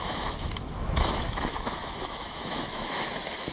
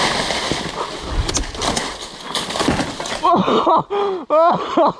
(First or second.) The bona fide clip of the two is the second